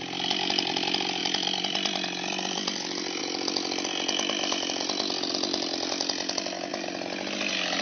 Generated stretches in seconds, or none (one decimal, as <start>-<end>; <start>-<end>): 1.2-3.2